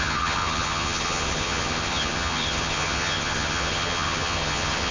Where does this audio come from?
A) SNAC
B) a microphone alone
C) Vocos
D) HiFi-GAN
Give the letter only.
D